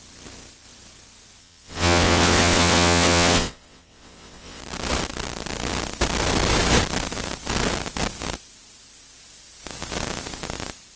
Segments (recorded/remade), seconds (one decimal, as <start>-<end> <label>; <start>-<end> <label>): 0.0-1.4 recorded; 1.4-4.6 remade; 4.6-11.0 recorded